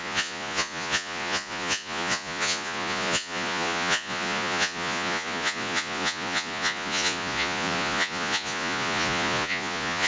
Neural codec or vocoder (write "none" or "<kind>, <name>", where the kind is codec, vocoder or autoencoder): vocoder, Vocos